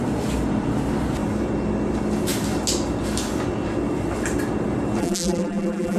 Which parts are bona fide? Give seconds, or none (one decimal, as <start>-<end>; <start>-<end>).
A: 0.0-5.0